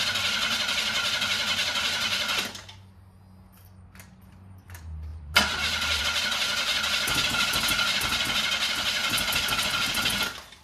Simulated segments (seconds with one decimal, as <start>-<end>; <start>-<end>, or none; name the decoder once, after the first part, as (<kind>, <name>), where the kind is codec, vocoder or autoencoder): 1.6-2.4 (vocoder, BigVGAN v2); 5.1-6.0